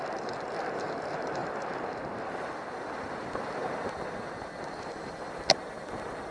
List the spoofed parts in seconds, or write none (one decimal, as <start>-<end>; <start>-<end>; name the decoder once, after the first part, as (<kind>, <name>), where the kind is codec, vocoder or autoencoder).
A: none

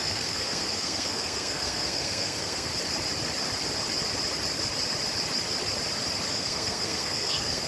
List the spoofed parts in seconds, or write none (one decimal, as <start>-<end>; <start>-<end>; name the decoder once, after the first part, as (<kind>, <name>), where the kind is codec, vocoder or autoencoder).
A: 0.0-2.7 (codec, SNAC); 6.3-7.7

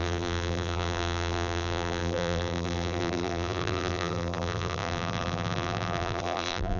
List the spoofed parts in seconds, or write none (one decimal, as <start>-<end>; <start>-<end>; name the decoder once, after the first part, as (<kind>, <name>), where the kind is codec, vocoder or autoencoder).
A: 0.0-6.8 (vocoder, BigVGAN v2)

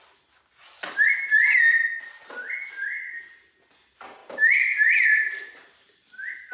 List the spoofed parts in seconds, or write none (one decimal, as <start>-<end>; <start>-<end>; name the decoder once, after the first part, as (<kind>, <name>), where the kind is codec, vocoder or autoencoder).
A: none